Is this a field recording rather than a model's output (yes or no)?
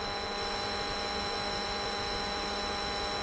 yes